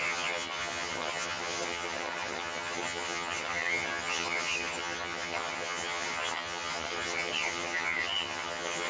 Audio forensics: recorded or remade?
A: remade